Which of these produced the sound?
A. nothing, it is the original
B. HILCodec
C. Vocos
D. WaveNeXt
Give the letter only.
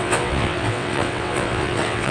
D